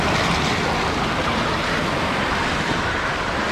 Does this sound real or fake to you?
real